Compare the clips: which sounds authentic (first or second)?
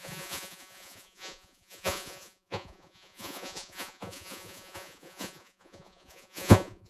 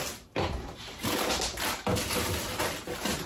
second